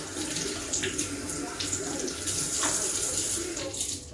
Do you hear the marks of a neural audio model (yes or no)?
no